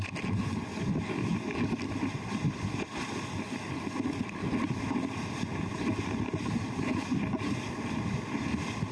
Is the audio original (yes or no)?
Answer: yes